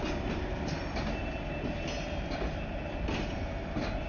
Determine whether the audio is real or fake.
real